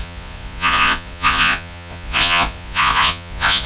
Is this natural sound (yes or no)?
no